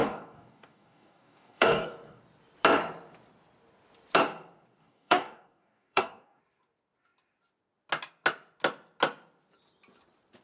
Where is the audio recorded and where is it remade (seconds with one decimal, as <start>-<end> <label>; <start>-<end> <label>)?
0.0-2.2 remade; 2.2-4.8 recorded; 4.8-6.4 remade; 6.4-10.4 recorded